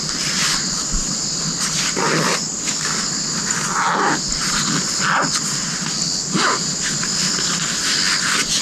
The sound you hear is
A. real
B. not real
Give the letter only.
A